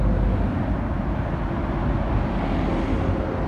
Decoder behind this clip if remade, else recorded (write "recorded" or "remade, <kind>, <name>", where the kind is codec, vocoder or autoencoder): recorded